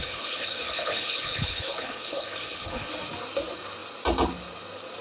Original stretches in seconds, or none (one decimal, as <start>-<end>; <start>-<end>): 2.9-5.0

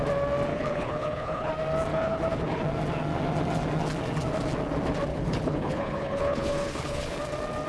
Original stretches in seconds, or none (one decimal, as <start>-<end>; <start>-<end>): 0.0-0.5; 1.5-1.9; 2.6-5.1; 7.2-7.7

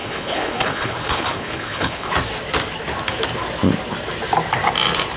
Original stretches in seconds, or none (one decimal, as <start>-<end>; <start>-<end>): 2.1-5.2